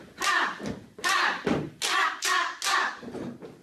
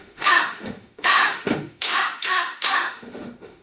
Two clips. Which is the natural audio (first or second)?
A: first